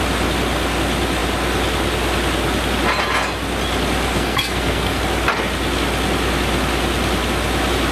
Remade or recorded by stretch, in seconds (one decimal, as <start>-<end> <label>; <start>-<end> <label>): 0.0-4.1 recorded; 4.1-5.0 remade; 5.0-7.9 recorded